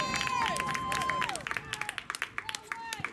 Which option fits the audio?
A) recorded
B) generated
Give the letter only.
A